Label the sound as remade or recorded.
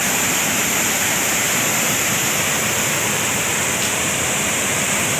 remade